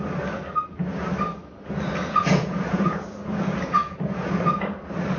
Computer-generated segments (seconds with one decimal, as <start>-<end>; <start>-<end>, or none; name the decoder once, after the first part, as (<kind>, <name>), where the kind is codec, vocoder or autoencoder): 1.9-4.7 (vocoder, Vocos)